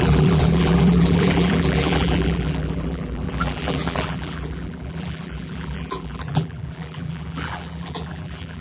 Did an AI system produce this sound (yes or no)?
yes